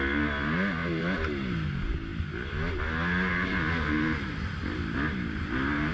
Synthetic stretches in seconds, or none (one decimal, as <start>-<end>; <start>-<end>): none

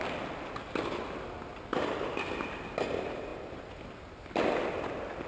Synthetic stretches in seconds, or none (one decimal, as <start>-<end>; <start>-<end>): none

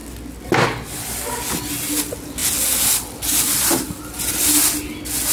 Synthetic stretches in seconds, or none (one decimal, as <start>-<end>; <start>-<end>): none

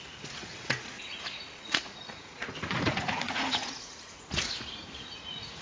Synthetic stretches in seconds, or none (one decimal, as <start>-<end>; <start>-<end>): 0.0-5.6

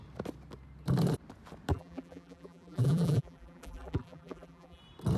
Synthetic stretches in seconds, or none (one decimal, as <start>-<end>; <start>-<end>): 1.7-4.8

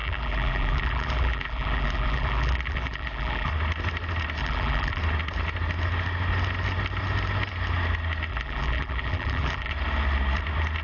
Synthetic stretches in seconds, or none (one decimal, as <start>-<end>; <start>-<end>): 0.0-3.5; 4.4-5.0; 8.3-9.7

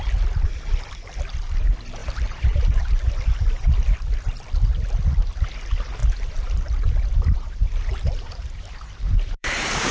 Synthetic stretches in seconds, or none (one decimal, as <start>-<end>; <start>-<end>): 2.0-2.9; 6.0-9.9